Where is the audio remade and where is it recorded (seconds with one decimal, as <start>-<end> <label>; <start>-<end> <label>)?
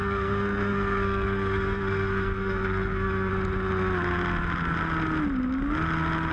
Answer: 0.0-3.3 remade; 3.3-6.3 recorded